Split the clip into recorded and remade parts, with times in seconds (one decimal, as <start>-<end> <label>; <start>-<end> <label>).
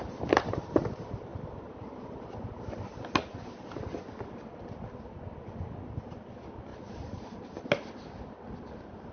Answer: 0.0-9.1 recorded